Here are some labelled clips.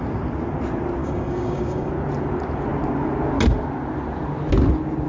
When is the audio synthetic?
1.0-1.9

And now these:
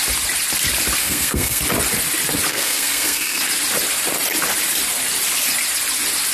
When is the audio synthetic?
1.0-1.6; 2.5-3.4

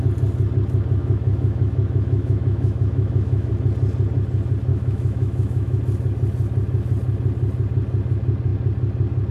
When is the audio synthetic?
1.0-3.5; 4.7-5.8

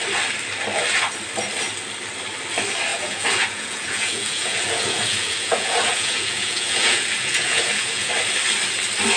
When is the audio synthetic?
2.9-8.1

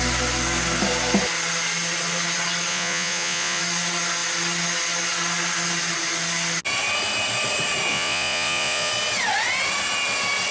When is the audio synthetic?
2.7-3.6; 7.9-8.9

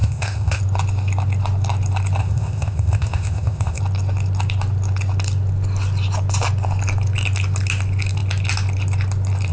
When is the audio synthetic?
0.0-0.6; 2.2-3.8